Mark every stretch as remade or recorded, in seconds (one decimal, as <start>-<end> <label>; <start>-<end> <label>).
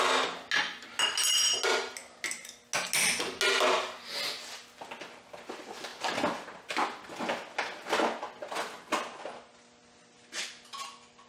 0.0-11.3 recorded